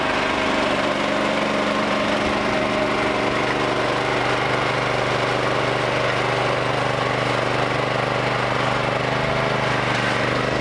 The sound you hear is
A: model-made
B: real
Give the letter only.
B